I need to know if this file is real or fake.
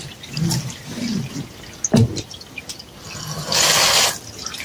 real